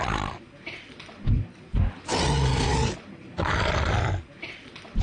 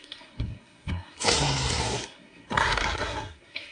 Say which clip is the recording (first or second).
first